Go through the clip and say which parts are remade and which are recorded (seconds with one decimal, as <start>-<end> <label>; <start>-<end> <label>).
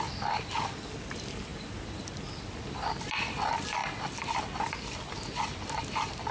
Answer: 0.0-6.3 recorded